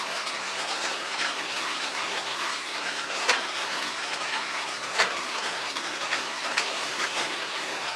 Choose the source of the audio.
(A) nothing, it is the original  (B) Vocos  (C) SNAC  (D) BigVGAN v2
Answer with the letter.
C